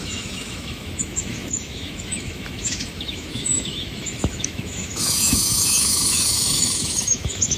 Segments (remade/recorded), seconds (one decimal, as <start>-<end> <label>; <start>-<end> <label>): 0.0-7.6 remade